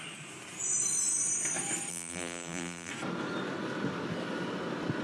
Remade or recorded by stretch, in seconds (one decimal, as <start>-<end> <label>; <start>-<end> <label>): 0.0-1.9 recorded; 1.9-2.9 remade; 2.9-5.0 recorded